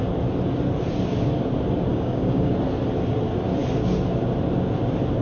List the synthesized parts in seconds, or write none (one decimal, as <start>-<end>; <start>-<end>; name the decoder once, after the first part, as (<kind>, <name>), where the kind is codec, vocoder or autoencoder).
1.9-2.5 (codec, DAC)